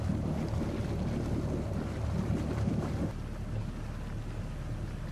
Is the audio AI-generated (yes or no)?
no